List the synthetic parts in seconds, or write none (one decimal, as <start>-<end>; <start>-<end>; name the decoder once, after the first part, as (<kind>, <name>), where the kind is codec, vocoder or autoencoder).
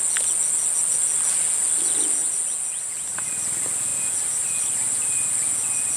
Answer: none